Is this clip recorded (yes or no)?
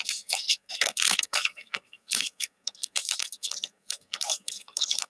no